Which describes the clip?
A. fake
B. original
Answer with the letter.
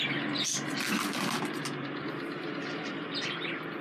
B